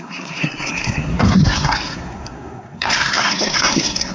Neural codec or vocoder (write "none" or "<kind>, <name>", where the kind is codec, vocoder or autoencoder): codec, SNAC